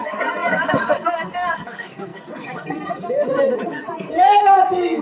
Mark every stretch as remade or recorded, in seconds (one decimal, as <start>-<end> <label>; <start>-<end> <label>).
0.0-5.0 remade